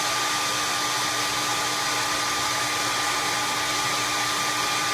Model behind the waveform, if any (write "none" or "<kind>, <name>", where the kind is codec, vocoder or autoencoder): none